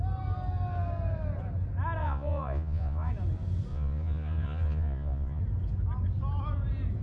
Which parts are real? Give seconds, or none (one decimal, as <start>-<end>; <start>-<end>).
0.0-2.0; 3.1-3.7; 5.4-7.0